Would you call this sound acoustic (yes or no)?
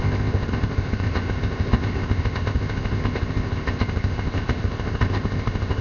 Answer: no